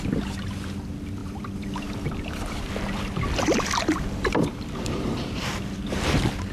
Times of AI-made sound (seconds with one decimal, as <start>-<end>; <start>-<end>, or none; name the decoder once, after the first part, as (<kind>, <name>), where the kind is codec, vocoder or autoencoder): 1.2-4.7 (vocoder, BigVGAN v2)